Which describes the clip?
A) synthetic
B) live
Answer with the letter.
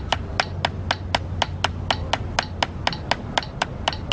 B